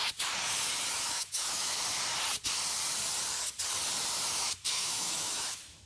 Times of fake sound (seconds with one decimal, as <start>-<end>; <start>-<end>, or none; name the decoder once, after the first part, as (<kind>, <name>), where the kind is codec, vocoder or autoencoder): 1.0-1.8 (autoencoder, DAC-VAE); 4.4-5.8

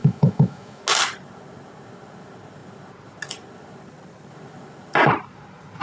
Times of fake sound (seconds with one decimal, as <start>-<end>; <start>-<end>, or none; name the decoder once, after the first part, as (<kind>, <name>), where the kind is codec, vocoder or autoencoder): 0.0-0.8 (autoencoder, DAC-VAE)

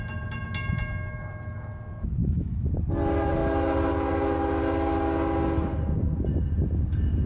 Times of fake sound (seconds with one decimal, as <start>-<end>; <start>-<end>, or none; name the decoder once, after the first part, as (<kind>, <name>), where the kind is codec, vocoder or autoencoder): 2.2-2.7 (autoencoder, DAC-VAE)

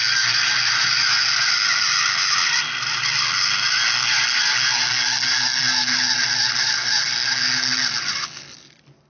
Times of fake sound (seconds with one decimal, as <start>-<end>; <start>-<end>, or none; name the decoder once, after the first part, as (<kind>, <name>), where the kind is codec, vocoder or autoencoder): none

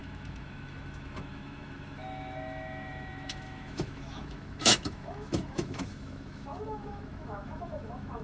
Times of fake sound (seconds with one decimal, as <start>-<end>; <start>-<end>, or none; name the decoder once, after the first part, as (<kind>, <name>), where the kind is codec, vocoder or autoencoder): 0.0-8.2 (autoencoder, DAC-VAE)